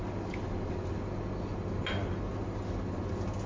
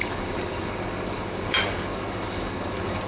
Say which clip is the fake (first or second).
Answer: second